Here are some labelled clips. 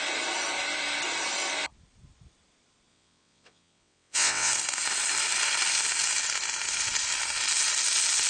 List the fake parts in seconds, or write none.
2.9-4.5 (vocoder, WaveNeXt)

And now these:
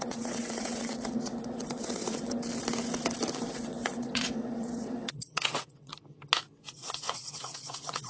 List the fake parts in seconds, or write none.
0.0-2.4 (vocoder, WaveNeXt); 3.5-5.9; 6.7-8.1

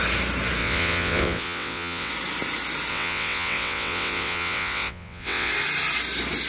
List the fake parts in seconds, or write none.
0.6-2.1 (vocoder, WaveNeXt); 2.9-5.5

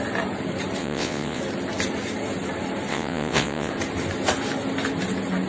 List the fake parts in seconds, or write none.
0.8-1.4 (vocoder, WaveNeXt); 2.9-3.7

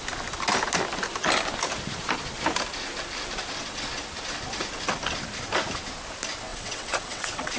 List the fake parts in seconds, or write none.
6.5-7.6 (vocoder, WaveNeXt)

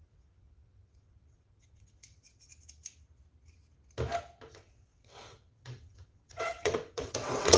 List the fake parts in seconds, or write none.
0.0-2.5 (vocoder, WaveNeXt); 4.5-7.6

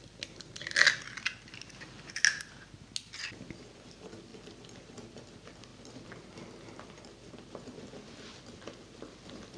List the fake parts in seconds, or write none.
none